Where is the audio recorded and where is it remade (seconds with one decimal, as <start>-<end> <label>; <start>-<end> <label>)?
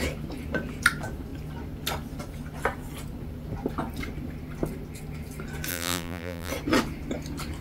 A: 0.0-5.7 recorded; 5.7-6.5 remade; 6.5-7.6 recorded